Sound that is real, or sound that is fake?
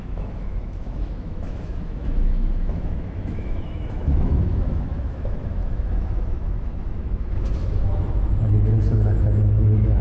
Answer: fake